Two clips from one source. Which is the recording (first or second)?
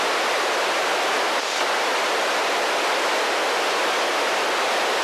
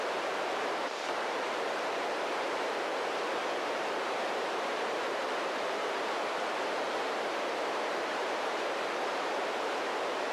first